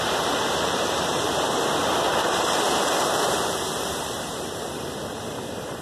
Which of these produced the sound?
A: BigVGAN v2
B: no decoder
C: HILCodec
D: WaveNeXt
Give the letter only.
A